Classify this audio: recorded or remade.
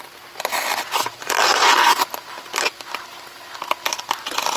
recorded